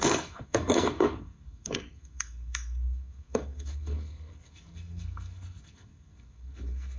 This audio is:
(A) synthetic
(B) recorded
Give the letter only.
A